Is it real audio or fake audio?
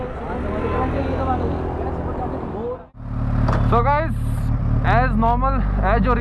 real